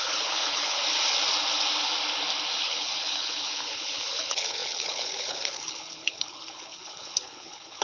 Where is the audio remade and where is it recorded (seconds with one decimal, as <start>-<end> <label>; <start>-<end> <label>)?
0.0-0.8 remade; 0.8-2.6 recorded; 2.6-7.8 remade